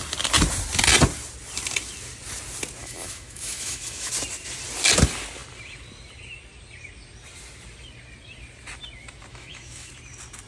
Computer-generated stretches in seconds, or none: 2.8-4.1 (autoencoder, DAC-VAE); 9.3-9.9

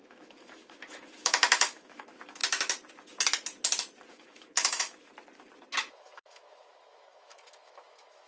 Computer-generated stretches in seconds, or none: 0.0-2.4 (autoencoder, DAC-VAE); 4.1-5.1; 5.8-8.3

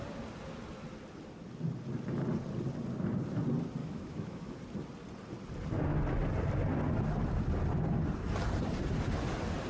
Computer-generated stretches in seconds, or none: 3.8-4.6 (autoencoder, DAC-VAE)

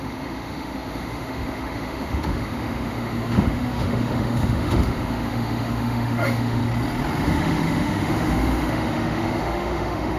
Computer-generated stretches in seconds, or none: 0.0-6.6 (autoencoder, DAC-VAE); 7.2-10.2

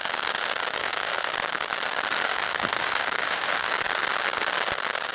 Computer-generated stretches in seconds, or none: 0.8-1.3 (autoencoder, DAC-VAE); 2.3-3.7